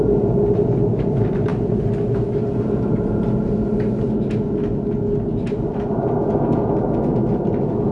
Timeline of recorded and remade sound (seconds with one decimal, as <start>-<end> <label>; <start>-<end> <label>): 0.0-7.9 recorded

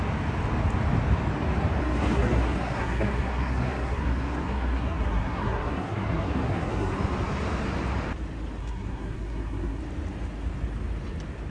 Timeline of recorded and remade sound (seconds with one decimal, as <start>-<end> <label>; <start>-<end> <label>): 0.0-1.8 recorded; 1.8-6.9 remade; 6.9-8.6 recorded; 8.6-9.8 remade; 9.8-11.5 recorded

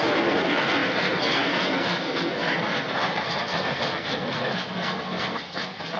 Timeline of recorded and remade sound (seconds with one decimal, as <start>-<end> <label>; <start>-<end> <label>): 0.0-6.0 remade

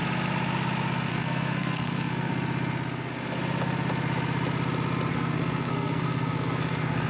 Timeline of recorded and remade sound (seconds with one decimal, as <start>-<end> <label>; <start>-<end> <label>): 0.0-1.1 recorded; 1.1-2.3 remade; 2.3-5.1 recorded; 5.1-7.1 remade

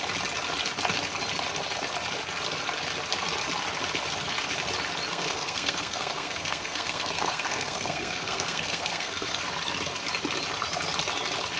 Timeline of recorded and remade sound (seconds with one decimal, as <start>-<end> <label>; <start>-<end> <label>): 0.0-5.1 recorded; 5.1-9.5 remade; 9.5-11.6 recorded

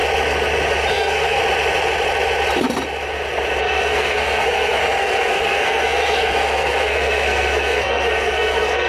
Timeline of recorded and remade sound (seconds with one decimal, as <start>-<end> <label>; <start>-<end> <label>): 0.0-0.9 recorded; 0.9-1.4 remade; 1.4-3.6 recorded; 3.6-8.9 remade

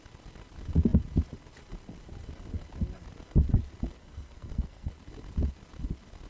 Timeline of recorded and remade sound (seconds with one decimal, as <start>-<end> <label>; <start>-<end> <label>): 0.0-4.0 recorded; 4.0-4.9 remade; 4.9-6.3 recorded

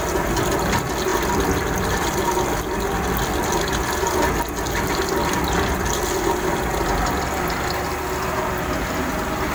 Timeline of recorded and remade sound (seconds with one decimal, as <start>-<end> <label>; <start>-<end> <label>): 0.0-9.5 recorded